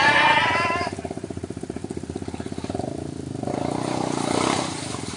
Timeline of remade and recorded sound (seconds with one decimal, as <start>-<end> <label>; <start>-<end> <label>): 0.0-0.5 remade; 0.5-1.1 recorded; 1.1-1.8 remade; 1.8-3.5 recorded; 3.5-5.2 remade